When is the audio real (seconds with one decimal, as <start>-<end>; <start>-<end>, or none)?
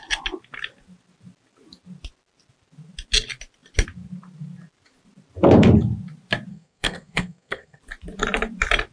0.0-6.5; 7.8-8.9